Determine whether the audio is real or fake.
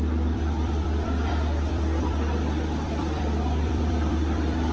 fake